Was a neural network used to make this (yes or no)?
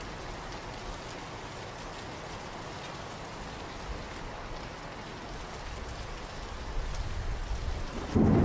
no